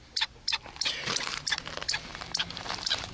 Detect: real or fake fake